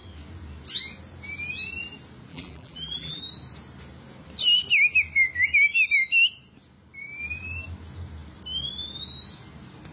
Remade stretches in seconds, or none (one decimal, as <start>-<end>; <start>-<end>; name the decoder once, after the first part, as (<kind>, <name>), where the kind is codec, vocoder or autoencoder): 2.3-3.2 (vocoder, BigVGAN v2)